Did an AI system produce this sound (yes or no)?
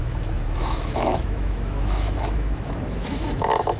yes